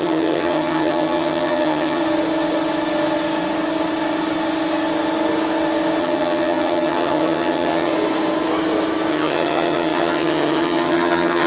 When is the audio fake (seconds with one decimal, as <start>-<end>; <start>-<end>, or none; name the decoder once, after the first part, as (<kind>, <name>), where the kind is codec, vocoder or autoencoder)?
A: 0.0-2.0 (vocoder, HiFi-GAN); 6.0-7.9; 9.1-11.5